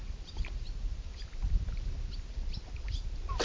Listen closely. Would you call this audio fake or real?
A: real